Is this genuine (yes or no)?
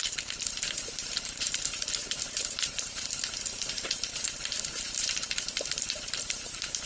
no